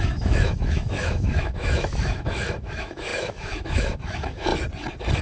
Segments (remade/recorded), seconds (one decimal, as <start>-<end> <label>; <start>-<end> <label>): 0.0-4.5 remade; 4.5-5.2 recorded